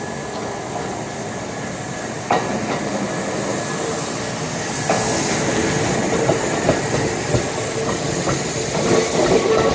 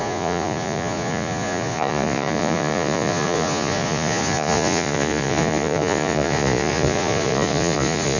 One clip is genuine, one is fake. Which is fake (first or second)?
second